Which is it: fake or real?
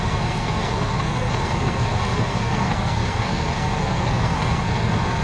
fake